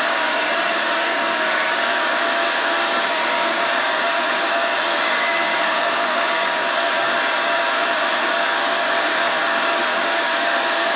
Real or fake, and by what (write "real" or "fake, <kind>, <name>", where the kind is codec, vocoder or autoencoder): fake, codec, DAC